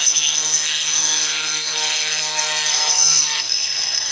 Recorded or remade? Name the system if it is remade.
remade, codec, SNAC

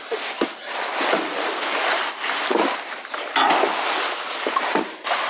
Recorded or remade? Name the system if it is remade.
recorded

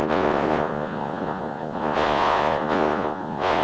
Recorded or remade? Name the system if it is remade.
remade, vocoder, Vocos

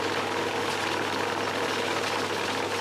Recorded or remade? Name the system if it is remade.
recorded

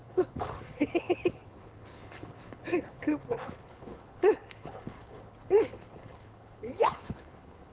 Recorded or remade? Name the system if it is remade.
remade, codec, HILCodec